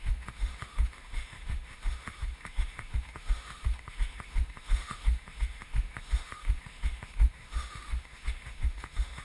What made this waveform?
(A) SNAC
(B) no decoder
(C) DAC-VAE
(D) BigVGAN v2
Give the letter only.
C